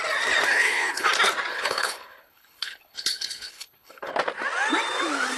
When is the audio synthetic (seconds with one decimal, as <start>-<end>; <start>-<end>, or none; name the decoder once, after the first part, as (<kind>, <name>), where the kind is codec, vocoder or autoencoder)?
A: 0.5-1.1 (codec, HILCodec); 1.5-4.1

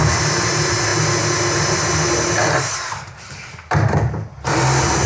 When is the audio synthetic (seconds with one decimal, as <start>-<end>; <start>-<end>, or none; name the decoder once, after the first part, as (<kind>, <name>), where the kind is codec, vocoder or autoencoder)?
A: none

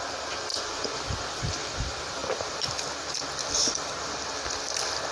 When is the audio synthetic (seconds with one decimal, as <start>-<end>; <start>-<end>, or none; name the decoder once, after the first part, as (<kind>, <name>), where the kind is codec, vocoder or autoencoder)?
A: 0.5-1.0 (vocoder, Vocos)